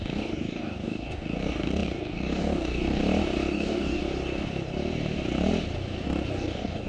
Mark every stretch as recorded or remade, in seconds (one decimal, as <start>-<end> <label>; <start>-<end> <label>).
0.0-3.0 remade; 3.0-3.5 recorded; 3.5-4.0 remade; 4.0-6.3 recorded; 6.3-6.9 remade